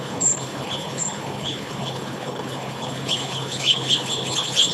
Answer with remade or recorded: remade